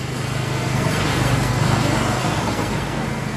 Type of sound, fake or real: fake